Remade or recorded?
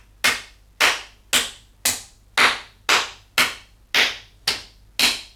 recorded